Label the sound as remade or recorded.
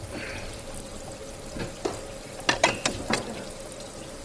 recorded